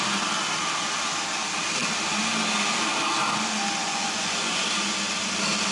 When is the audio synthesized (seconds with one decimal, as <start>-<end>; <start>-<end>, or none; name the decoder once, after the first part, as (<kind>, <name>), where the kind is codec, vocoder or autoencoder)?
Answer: 3.8-4.7 (vocoder, Vocos)